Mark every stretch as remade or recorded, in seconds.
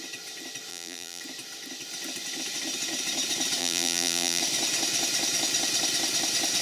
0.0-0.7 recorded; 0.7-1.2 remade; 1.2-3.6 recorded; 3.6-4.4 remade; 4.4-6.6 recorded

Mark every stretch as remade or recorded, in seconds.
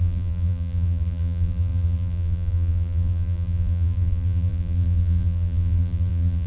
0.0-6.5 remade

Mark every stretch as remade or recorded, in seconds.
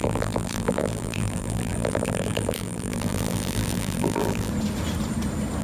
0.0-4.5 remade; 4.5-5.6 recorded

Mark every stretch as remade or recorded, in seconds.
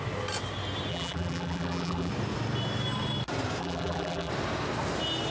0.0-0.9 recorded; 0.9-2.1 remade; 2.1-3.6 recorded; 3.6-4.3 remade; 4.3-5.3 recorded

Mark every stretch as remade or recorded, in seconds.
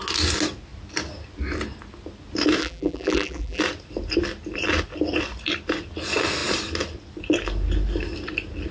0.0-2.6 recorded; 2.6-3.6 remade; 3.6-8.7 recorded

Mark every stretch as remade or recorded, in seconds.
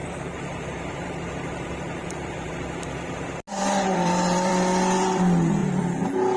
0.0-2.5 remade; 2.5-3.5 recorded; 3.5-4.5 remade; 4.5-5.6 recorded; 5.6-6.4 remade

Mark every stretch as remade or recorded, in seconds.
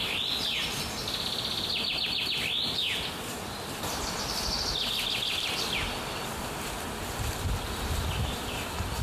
0.0-9.0 recorded